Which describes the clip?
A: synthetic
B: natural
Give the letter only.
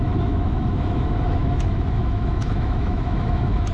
A